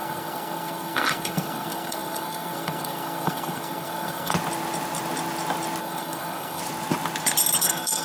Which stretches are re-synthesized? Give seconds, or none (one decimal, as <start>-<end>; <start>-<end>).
0.0-4.3; 5.8-6.6; 7.6-8.0